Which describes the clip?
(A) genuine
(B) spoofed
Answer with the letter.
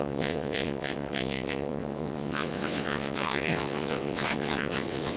B